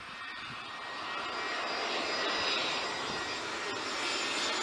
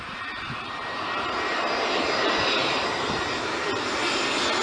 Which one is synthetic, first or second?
second